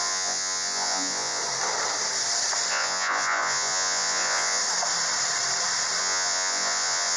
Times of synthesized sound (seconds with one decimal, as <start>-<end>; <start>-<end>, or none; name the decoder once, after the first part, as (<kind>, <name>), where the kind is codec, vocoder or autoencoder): 0.0-1.4 (vocoder, Vocos); 2.7-4.6; 6.0-7.2